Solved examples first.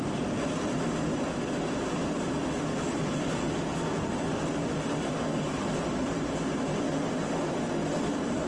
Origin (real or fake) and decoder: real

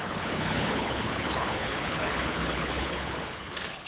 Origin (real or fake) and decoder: fake, codec, HILCodec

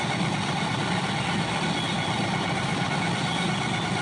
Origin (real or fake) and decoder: real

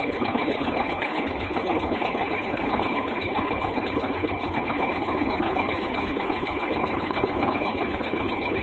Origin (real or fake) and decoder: fake, codec, HILCodec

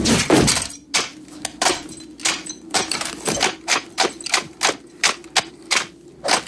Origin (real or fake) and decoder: real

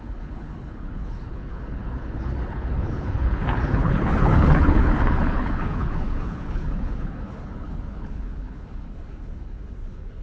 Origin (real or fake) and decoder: fake, codec, HILCodec